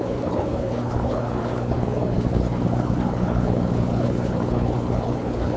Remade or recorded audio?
remade